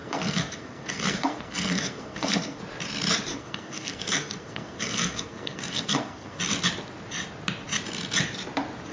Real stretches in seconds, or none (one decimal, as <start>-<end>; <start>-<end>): 2.6-3.3; 6.4-8.9